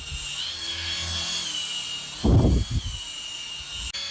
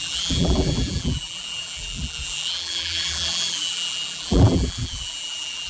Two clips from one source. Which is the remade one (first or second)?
second